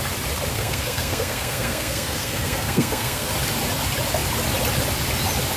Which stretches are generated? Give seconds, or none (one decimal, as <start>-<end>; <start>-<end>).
0.5-3.3